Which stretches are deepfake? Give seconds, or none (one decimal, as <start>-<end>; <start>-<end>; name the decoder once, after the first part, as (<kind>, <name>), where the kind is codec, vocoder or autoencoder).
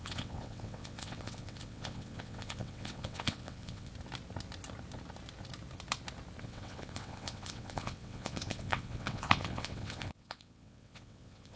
0.0-3.9 (vocoder, WaveNeXt); 6.4-11.6